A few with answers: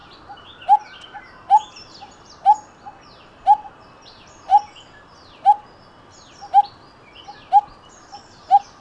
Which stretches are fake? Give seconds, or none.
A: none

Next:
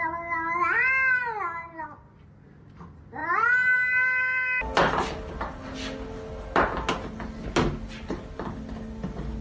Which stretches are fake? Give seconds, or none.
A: none

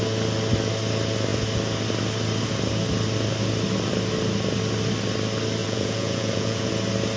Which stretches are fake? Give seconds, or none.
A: 5.6-6.7 (vocoder, Vocos)

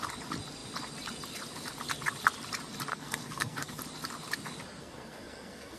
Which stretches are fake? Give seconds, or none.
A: 2.9-3.8 (codec, SNAC); 4.8-5.8

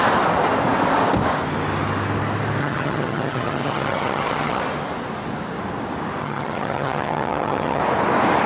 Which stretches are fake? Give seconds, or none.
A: 2.6-4.6 (vocoder, HiFi-GAN); 6.2-7.8

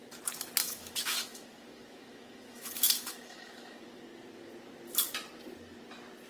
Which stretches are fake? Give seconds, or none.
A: 0.6-3.8 (autoencoder, DAC-VAE)

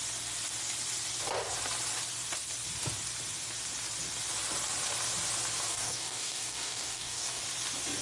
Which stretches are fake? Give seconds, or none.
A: 5.7-7.4 (codec, DAC)

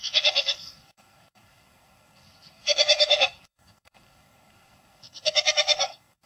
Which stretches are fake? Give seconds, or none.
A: 0.0-6.3 (codec, SNAC)